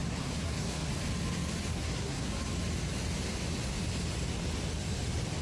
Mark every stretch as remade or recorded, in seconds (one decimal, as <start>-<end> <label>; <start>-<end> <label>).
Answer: 0.0-0.9 remade; 0.9-1.7 recorded; 1.7-2.3 remade; 2.3-5.4 recorded